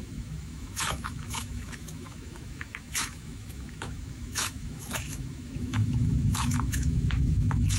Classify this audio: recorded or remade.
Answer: remade